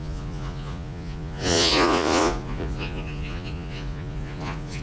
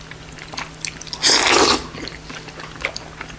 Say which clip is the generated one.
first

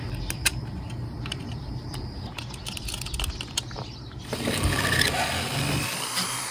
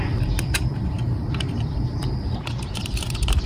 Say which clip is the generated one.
second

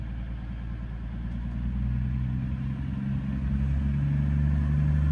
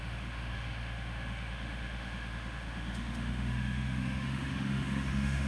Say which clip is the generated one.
second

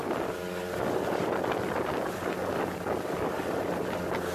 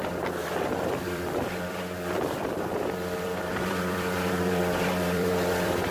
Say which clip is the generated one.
second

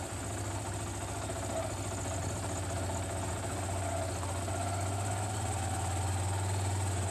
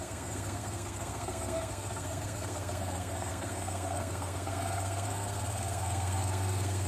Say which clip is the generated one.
second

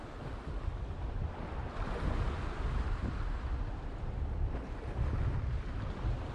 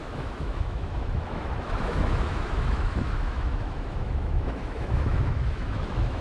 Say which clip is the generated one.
second